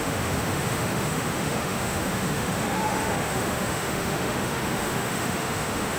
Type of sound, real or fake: fake